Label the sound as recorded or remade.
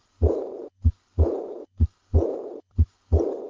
remade